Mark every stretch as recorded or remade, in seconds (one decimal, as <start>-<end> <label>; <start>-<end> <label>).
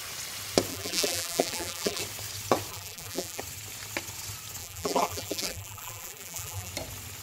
0.0-0.7 recorded; 0.7-2.0 remade; 2.0-2.7 recorded; 2.7-3.4 remade; 3.4-4.6 recorded; 4.6-6.7 remade; 6.7-7.2 recorded